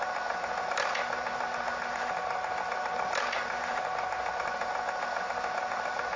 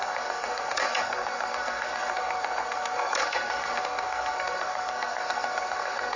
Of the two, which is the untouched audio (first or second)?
first